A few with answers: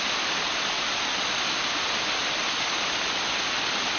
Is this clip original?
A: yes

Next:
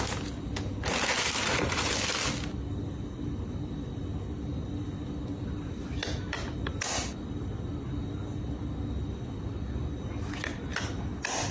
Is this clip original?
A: yes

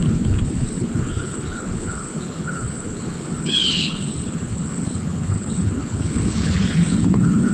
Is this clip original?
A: no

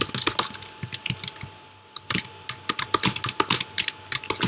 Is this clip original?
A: yes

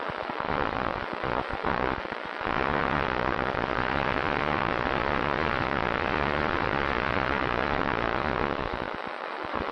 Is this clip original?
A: no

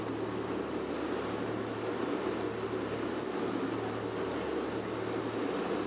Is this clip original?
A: yes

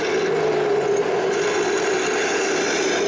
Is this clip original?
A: yes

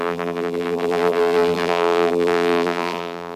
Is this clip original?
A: no